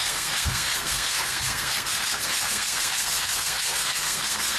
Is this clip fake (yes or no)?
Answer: yes